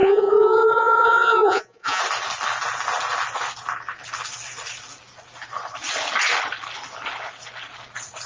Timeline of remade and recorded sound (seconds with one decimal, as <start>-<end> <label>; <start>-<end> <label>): 0.0-2.0 remade; 2.0-8.3 recorded